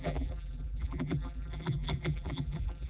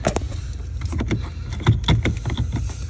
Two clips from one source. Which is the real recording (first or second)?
second